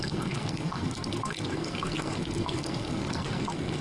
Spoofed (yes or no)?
yes